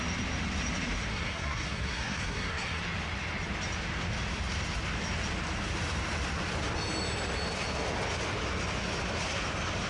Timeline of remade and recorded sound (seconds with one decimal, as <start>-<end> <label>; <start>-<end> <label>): 0.0-1.1 recorded; 1.1-2.8 remade; 2.8-9.9 recorded